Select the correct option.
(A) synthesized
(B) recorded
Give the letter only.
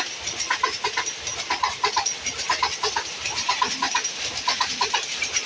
B